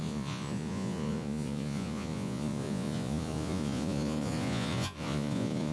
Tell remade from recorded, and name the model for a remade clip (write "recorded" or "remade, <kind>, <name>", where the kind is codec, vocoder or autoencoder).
remade, vocoder, Vocos